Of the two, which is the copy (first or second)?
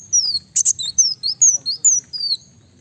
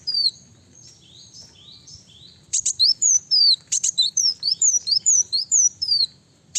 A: second